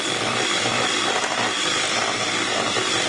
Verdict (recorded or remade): recorded